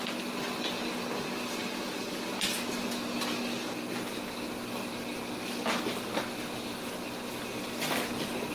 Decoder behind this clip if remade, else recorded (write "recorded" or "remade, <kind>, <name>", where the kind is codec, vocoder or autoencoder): recorded